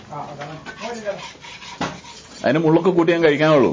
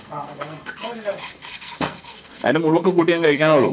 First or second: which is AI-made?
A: second